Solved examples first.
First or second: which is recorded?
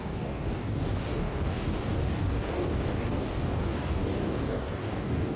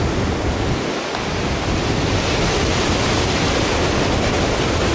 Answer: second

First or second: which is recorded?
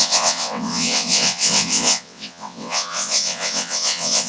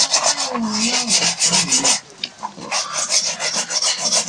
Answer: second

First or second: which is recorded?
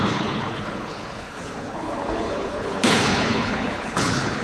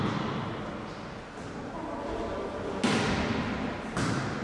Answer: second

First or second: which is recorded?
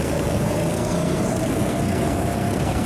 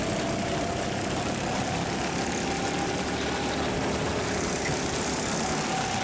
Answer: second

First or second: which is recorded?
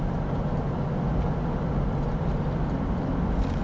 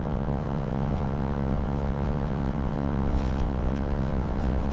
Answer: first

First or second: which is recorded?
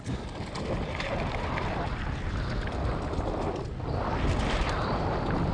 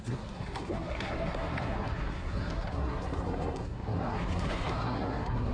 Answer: first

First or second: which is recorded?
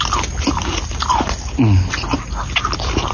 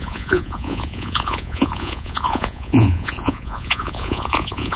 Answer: first